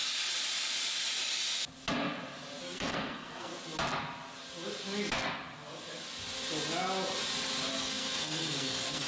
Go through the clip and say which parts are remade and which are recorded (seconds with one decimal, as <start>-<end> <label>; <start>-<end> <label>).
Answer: 0.0-2.6 recorded; 2.6-3.5 remade; 3.5-7.7 recorded; 7.7-9.1 remade